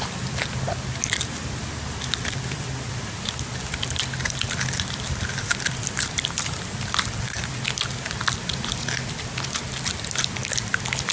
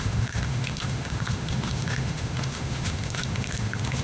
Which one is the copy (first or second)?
second